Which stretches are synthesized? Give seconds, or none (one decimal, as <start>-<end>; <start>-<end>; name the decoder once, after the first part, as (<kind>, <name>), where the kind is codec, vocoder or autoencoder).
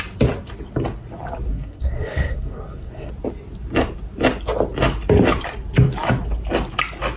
1.5-3.1 (codec, SNAC)